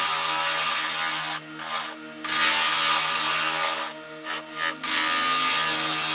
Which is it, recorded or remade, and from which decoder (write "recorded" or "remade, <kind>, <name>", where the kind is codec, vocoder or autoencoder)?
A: recorded